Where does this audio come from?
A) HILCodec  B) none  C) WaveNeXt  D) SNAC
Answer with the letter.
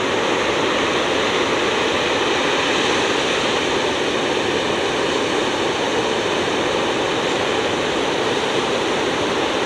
B